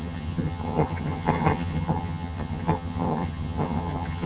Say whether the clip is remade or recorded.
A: remade